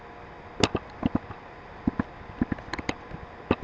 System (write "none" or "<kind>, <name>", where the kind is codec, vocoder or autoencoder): none